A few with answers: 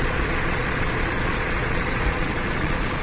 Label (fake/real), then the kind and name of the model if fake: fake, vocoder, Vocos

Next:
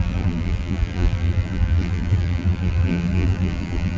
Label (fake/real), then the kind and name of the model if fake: fake, vocoder, BigVGAN v2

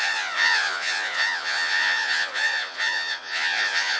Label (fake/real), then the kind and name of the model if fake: fake, vocoder, Vocos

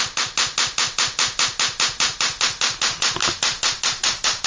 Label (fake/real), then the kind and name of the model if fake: real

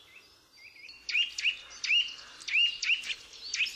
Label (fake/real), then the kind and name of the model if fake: real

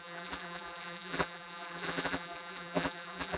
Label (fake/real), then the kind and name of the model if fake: fake, vocoder, BigVGAN v2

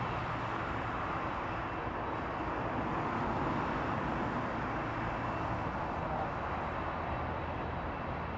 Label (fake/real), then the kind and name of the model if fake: real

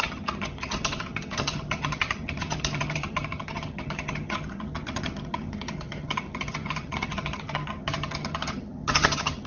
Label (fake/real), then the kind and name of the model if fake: fake, vocoder, HiFi-GAN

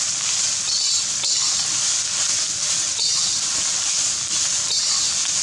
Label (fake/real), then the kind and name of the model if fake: real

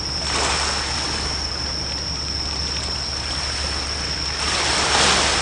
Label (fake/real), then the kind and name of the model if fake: real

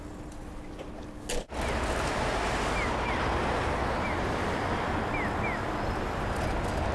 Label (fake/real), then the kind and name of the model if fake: real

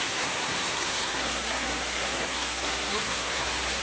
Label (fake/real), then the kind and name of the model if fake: fake, codec, SNAC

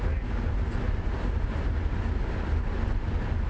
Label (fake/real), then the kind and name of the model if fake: real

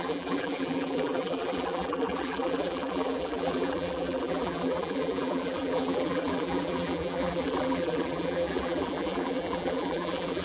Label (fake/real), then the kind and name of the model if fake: fake, vocoder, BigVGAN v2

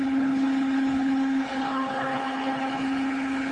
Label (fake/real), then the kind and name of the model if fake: fake, codec, HILCodec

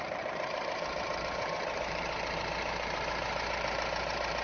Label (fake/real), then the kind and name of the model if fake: fake, vocoder, BigVGAN v2